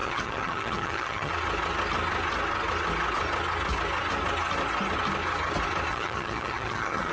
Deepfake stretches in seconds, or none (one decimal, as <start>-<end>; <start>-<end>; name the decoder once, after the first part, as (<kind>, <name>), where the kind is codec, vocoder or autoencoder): 0.0-1.3 (vocoder, HiFi-GAN); 5.9-7.1